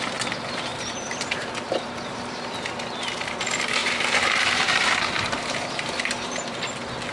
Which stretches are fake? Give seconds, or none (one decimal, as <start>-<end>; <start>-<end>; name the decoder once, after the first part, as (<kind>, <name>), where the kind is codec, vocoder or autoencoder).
0.7-2.5 (vocoder, BigVGAN v2); 3.8-6.6

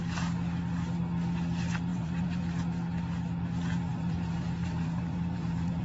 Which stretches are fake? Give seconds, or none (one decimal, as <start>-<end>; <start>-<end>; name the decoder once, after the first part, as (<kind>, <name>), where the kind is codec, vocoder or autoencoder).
1.9-2.4 (vocoder, BigVGAN v2); 3.9-5.8

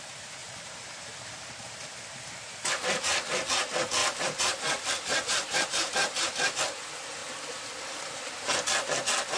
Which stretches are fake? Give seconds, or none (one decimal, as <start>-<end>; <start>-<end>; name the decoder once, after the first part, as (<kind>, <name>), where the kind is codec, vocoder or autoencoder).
0.4-2.7 (vocoder, BigVGAN v2); 4.0-6.6

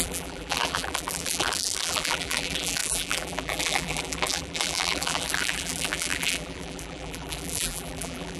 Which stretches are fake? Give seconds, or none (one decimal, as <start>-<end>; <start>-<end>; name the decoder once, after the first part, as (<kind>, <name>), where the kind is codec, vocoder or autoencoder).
0.0-8.4 (vocoder, BigVGAN v2)

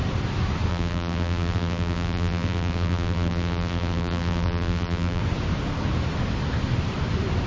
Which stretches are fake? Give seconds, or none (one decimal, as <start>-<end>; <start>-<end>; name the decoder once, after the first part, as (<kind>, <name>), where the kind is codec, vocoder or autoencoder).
0.7-5.2 (vocoder, BigVGAN v2)

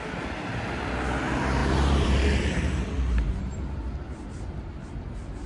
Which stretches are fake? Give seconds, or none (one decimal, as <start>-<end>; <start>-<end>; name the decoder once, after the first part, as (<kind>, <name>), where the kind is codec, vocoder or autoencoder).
1.6-2.8 (vocoder, BigVGAN v2)